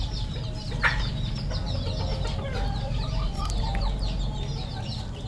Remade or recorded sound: recorded